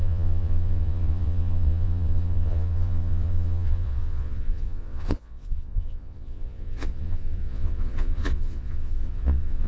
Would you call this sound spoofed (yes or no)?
yes